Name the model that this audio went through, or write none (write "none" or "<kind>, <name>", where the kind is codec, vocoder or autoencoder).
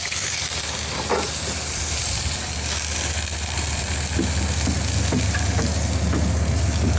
none